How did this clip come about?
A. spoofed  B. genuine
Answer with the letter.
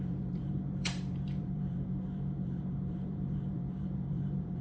A